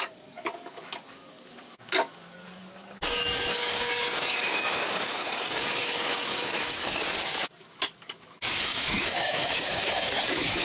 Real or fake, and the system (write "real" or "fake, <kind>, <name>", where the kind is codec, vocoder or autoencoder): fake, codec, DAC